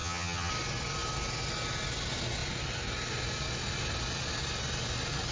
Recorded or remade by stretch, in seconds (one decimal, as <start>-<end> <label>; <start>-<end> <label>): 0.0-0.5 remade; 0.5-5.3 recorded